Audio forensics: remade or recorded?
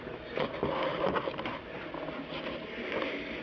recorded